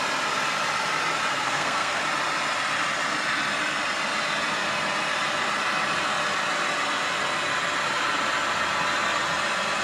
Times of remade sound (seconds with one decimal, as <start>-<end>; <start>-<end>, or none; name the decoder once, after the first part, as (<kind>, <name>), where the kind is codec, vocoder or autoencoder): 1.3-2.0 (codec, SNAC)